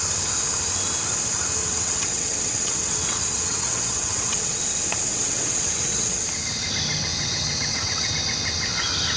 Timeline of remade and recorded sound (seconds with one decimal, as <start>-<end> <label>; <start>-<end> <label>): 0.0-1.6 recorded; 1.6-4.6 remade; 4.6-5.1 recorded; 5.1-6.2 remade; 6.2-7.1 recorded; 7.1-8.1 remade; 8.1-9.2 recorded